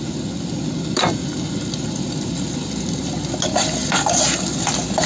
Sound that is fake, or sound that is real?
real